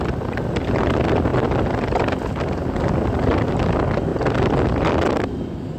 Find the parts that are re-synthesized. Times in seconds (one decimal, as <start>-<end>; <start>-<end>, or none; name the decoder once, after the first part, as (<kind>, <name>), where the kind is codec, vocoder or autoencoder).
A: none